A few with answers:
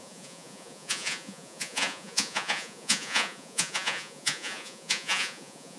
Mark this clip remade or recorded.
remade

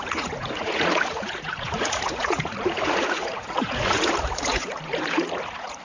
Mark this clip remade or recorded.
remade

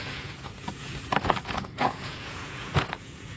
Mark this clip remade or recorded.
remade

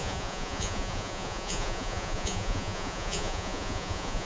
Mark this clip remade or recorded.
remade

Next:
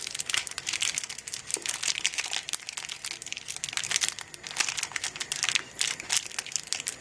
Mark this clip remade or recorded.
recorded